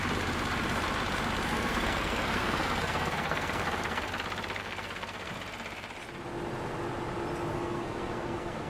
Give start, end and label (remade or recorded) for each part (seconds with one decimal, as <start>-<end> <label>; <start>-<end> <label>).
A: 0.0-1.5 recorded; 1.5-4.1 remade; 4.1-4.6 recorded; 4.6-5.3 remade; 5.3-7.5 recorded; 7.5-8.7 remade